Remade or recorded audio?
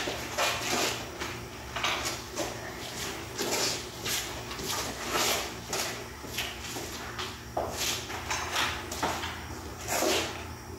recorded